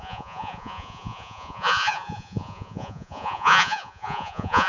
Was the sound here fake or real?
fake